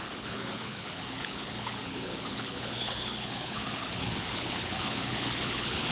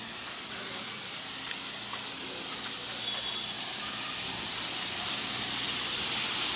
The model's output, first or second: first